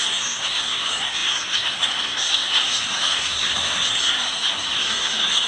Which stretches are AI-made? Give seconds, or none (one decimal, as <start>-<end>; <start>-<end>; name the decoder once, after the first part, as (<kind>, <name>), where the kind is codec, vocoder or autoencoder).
0.0-5.5 (codec, SNAC)